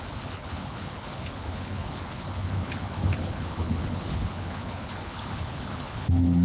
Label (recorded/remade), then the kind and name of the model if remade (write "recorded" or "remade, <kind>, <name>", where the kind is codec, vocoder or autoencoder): remade, codec, HILCodec